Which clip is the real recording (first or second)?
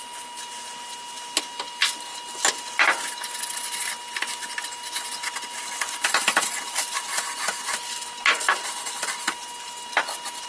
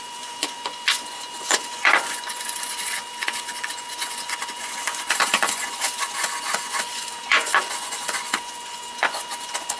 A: first